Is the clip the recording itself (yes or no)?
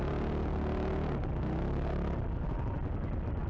yes